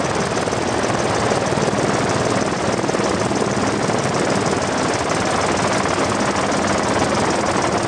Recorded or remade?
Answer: recorded